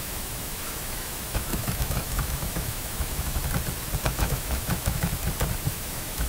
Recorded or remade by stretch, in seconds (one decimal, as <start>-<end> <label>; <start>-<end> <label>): 0.0-3.4 remade; 3.4-4.0 recorded; 4.0-5.1 remade; 5.1-5.7 recorded; 5.7-6.3 remade